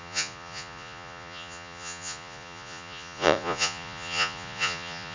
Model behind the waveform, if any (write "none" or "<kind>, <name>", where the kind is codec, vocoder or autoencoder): vocoder, Vocos